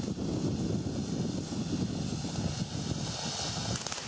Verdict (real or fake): real